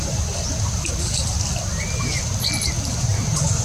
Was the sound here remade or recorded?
recorded